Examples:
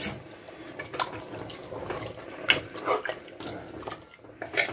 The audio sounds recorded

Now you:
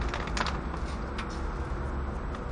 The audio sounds recorded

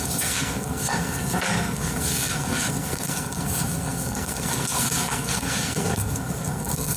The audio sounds remade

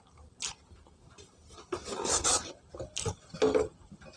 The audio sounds recorded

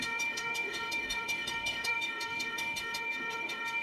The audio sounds remade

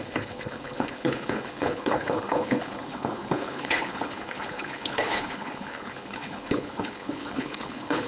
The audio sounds remade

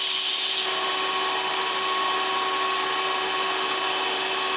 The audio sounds recorded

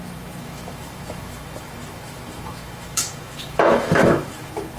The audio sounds remade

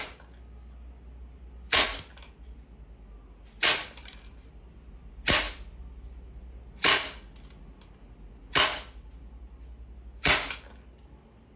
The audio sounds recorded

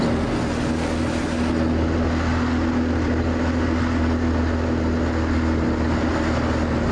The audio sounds recorded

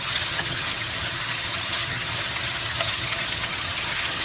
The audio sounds remade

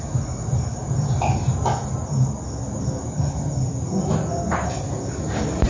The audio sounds recorded